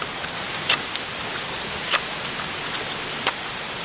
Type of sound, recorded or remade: recorded